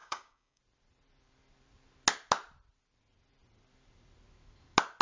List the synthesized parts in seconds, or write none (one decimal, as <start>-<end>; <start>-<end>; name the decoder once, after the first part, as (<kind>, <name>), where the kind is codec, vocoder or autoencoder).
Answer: 0.0-0.6 (codec, DAC)